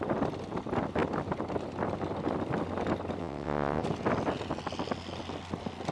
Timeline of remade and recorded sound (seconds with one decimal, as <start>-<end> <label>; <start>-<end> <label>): 0.0-3.2 recorded; 3.2-3.8 remade; 3.8-5.9 recorded